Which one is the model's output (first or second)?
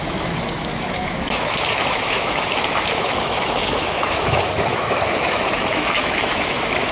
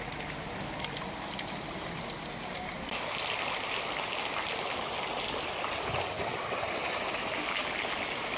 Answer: first